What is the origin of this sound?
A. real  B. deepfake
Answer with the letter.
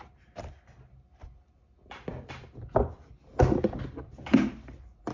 A